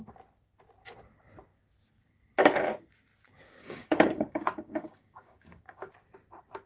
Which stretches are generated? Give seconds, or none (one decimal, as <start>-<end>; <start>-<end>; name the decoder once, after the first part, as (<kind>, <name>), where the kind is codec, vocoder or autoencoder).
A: 3.6-5.9 (codec, DAC)